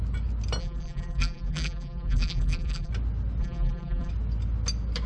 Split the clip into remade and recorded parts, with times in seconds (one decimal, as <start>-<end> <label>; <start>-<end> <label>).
0.0-0.6 recorded; 0.6-2.9 remade; 2.9-3.4 recorded; 3.4-4.1 remade; 4.1-5.1 recorded